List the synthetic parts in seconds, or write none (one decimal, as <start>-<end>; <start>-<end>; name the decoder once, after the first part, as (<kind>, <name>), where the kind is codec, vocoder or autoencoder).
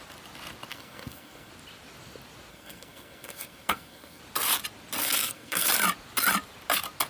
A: 0.7-1.5 (codec, SNAC); 2.5-4.2; 5.0-5.7